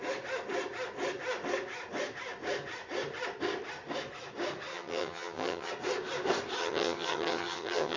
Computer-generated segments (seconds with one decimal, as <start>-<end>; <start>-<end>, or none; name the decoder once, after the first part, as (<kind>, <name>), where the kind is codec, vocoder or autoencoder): 4.7-5.7 (vocoder, HiFi-GAN); 6.6-8.0